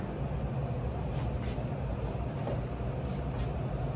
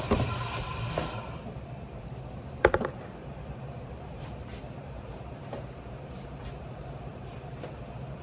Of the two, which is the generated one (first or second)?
second